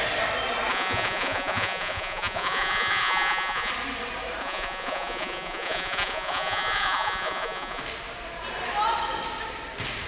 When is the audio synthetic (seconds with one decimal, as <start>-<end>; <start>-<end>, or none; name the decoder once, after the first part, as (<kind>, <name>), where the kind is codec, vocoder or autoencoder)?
0.7-3.7 (vocoder, Vocos); 4.4-7.8